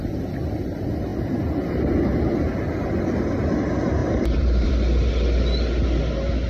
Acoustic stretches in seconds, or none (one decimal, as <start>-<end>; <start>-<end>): 0.0-4.0; 4.7-6.5